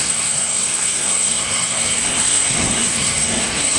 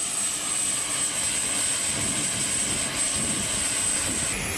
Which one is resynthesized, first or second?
first